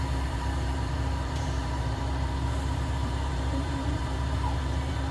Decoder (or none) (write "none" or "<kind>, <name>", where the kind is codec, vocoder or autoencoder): vocoder, BigVGAN v2